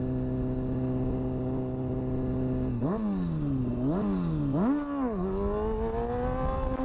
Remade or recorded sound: recorded